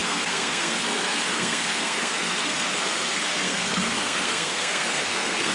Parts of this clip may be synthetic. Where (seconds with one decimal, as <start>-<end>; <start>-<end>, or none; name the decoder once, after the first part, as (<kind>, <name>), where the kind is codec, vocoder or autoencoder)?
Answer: 0.0-5.5 (codec, SNAC)